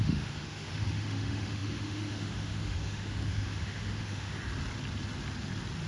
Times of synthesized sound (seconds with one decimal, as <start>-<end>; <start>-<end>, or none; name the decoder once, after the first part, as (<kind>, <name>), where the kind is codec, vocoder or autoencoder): 0.0-4.4 (autoencoder, DAC-VAE)